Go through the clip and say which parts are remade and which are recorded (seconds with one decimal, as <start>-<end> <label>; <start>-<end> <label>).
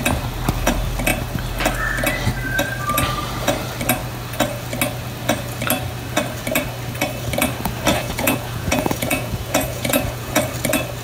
0.0-7.9 recorded; 7.9-10.4 remade; 10.4-11.0 recorded